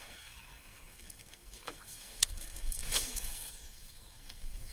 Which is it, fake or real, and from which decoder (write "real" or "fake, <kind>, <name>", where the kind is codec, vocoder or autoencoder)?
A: fake, codec, SNAC